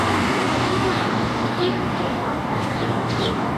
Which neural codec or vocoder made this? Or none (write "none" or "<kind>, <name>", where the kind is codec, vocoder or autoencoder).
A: codec, DAC